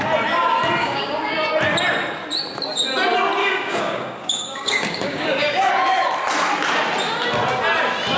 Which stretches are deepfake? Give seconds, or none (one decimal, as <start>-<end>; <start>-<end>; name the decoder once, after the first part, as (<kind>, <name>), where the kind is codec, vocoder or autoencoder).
0.8-1.5 (codec, DAC); 3.4-5.7